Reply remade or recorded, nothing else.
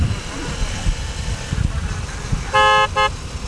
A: recorded